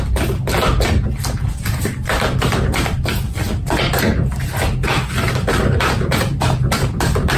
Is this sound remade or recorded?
recorded